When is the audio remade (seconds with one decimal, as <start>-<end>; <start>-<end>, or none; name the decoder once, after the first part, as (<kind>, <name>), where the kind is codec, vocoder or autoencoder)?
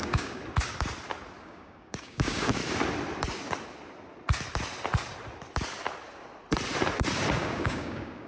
0.0-0.4 (codec, DAC); 1.4-2.6; 7.4-8.3